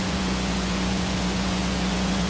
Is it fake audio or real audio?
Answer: fake